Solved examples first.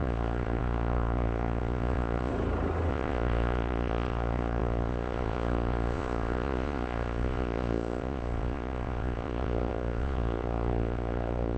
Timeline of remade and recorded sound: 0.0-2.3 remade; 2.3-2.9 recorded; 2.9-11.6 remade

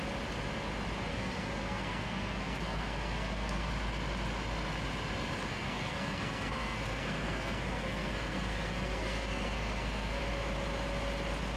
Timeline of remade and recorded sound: 0.0-1.1 recorded; 1.1-3.7 remade; 3.7-5.5 recorded; 5.5-10.2 remade; 10.2-11.6 recorded

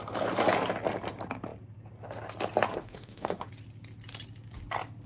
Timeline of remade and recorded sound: 0.0-2.7 recorded; 2.7-3.5 remade; 3.5-5.1 recorded

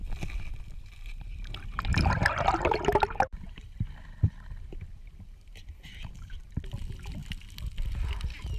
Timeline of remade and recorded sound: 0.0-8.6 recorded